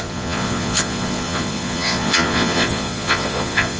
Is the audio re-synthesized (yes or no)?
yes